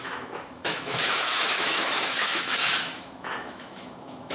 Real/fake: fake